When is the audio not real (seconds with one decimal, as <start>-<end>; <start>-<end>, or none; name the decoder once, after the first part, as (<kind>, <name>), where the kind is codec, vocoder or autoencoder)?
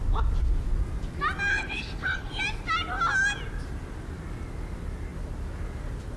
1.5-2.4 (codec, HILCodec)